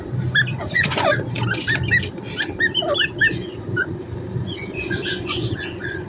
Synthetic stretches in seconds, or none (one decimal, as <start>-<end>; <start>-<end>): 0.5-1.1; 3.3-4.0; 4.4-6.1